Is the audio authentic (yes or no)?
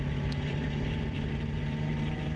no